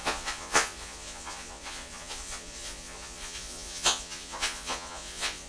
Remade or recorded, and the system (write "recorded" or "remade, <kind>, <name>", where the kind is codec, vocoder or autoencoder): remade, vocoder, Vocos